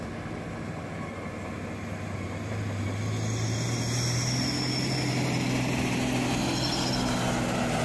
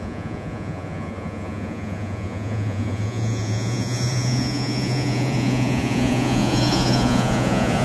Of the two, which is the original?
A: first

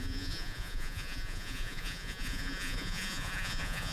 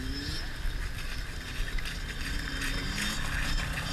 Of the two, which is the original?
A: second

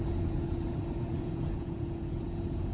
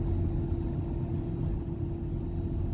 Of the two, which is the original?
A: second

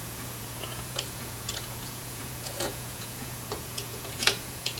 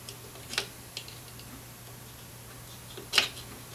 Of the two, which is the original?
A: second